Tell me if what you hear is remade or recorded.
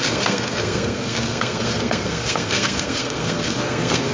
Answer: remade